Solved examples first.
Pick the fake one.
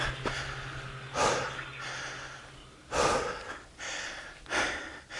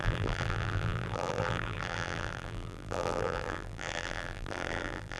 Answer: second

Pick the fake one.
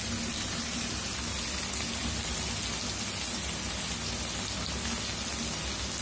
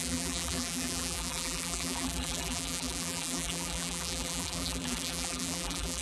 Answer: second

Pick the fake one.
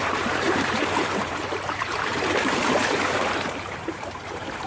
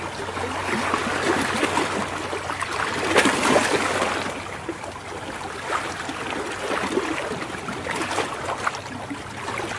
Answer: first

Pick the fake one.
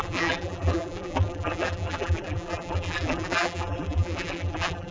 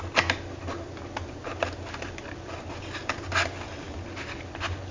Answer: first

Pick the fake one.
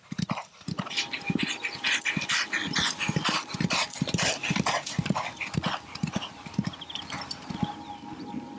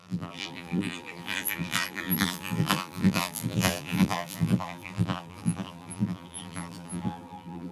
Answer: second